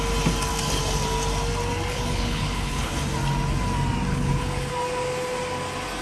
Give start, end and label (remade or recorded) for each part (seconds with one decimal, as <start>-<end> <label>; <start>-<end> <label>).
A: 0.0-1.9 recorded; 1.9-2.9 remade; 2.9-4.1 recorded; 4.1-4.7 remade; 4.7-6.0 recorded